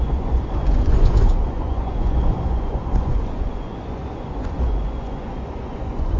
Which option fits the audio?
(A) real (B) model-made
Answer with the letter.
B